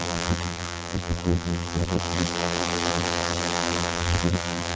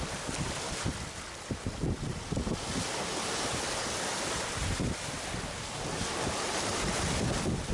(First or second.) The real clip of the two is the second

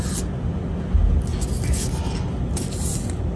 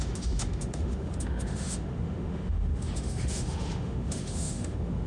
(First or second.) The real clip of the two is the first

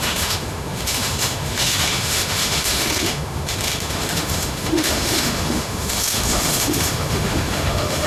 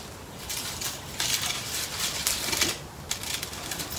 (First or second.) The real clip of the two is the second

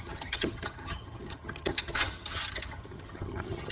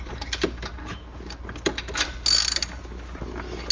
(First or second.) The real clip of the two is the second